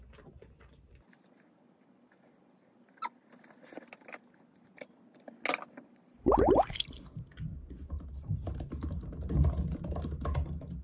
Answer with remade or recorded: recorded